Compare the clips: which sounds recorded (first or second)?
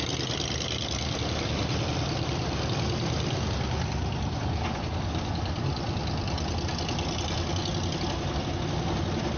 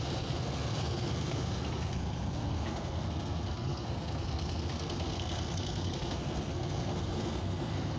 first